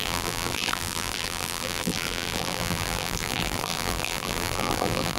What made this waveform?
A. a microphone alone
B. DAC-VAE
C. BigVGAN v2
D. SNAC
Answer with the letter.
C